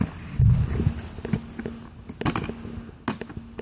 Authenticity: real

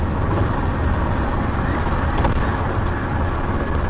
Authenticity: real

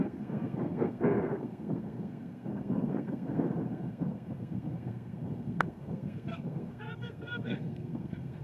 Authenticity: fake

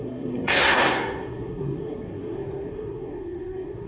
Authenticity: fake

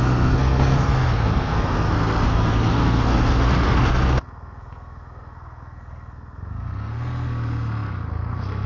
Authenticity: fake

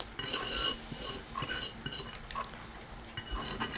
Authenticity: real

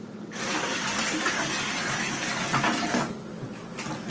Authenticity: real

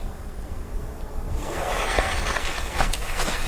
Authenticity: fake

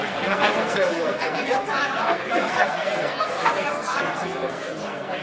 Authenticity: fake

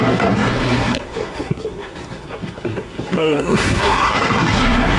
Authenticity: fake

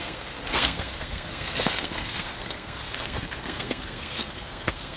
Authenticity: fake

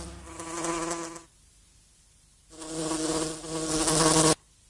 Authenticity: real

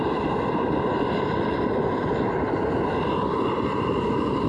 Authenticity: real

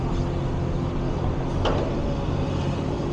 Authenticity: real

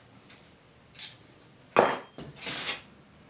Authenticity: real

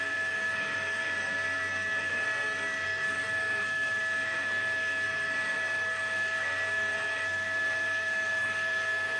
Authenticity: fake